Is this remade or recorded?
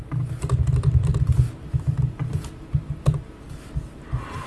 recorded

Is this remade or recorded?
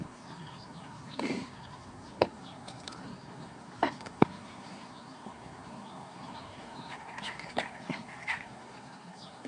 remade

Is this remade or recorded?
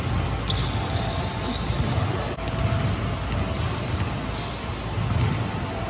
recorded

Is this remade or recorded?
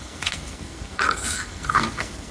remade